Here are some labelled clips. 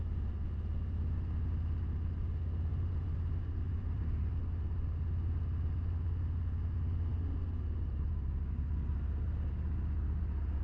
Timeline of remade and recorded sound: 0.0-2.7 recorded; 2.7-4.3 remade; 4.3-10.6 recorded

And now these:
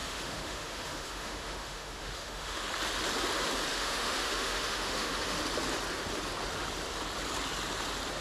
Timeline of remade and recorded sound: 0.0-2.6 remade; 2.6-3.7 recorded; 3.7-5.4 remade; 5.4-8.2 recorded

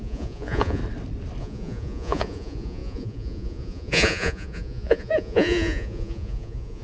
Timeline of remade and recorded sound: 0.0-0.8 remade; 0.8-1.4 recorded; 1.4-6.8 remade

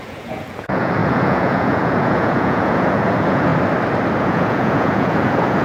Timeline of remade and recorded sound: 0.0-3.5 remade; 3.5-4.2 recorded; 4.2-5.6 remade

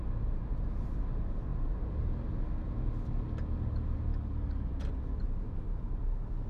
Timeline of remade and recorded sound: 0.0-4.1 recorded; 4.1-4.7 remade; 4.7-6.5 recorded

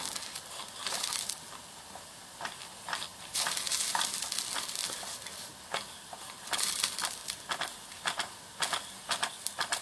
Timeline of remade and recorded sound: 0.0-3.1 recorded; 3.1-4.2 remade; 4.2-7.2 recorded; 7.2-8.4 remade; 8.4-9.8 recorded